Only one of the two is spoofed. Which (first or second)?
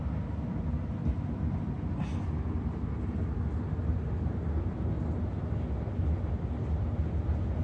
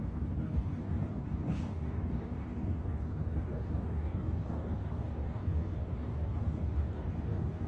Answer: second